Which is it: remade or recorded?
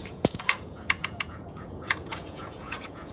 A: remade